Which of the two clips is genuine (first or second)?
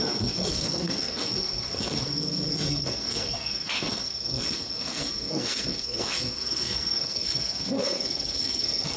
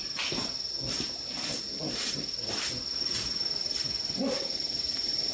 second